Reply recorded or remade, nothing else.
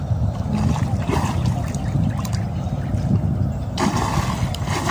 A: recorded